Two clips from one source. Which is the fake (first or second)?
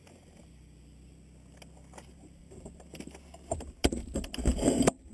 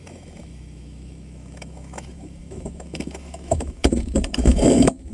second